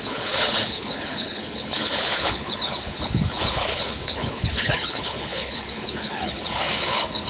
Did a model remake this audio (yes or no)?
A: yes